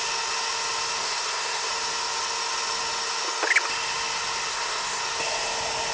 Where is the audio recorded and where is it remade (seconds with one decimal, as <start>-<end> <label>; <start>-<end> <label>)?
0.0-1.0 recorded; 1.0-1.7 remade; 1.7-4.5 recorded; 4.5-5.0 remade; 5.0-5.9 recorded